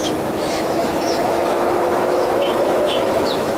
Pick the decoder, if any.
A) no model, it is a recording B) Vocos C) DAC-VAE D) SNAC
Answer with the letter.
C